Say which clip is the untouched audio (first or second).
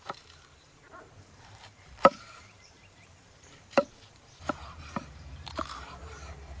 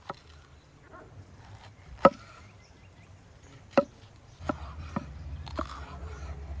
second